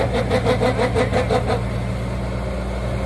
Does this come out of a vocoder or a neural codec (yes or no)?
no